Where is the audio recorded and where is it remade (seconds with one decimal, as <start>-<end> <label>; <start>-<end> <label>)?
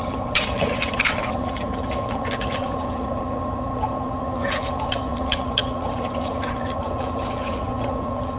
0.0-8.4 remade